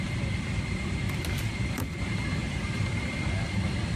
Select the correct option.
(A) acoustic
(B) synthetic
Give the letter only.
B